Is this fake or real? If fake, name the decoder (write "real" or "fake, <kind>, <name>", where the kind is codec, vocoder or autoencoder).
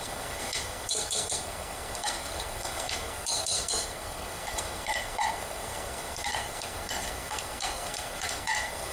fake, codec, SNAC